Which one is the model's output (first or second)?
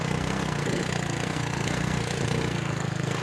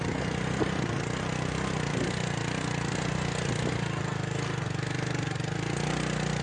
first